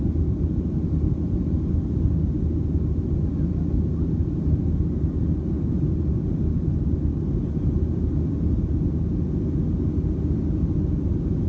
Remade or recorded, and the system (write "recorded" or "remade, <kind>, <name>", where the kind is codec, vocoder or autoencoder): recorded